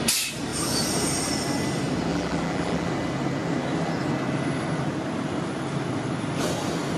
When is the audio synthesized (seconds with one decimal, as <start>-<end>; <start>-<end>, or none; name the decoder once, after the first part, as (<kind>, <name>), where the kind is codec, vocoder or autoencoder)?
2.1-2.9 (vocoder, BigVGAN v2)